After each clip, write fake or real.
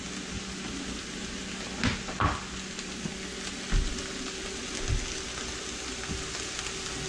real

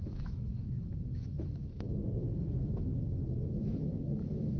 fake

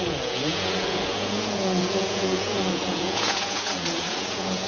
fake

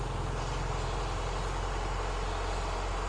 real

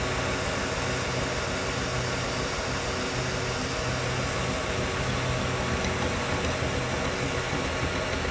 real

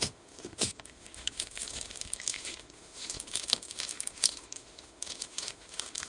fake